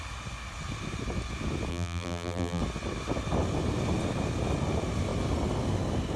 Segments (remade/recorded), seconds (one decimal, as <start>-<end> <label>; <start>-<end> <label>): 0.0-1.7 recorded; 1.7-2.6 remade; 2.6-6.2 recorded